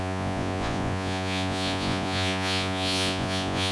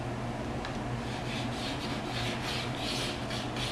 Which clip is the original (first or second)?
second